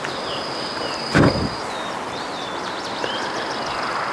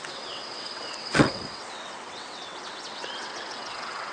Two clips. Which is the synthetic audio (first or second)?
second